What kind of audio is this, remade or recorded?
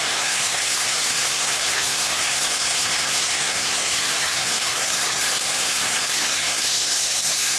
remade